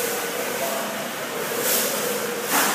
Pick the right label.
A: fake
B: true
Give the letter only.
B